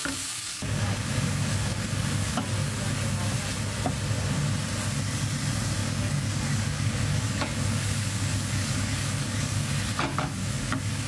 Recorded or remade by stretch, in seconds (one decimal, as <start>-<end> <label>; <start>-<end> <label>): 0.0-2.4 remade; 2.4-5.8 recorded; 5.8-9.7 remade; 9.7-10.1 recorded; 10.1-11.1 remade